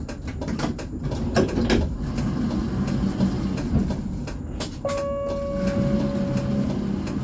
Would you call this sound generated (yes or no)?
no